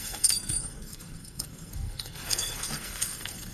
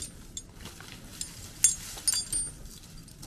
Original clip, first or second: second